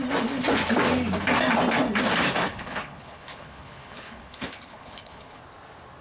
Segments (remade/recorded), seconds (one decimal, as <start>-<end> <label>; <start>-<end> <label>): 0.0-2.5 recorded; 2.5-5.4 remade; 5.4-6.0 recorded